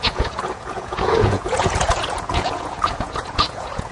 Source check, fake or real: fake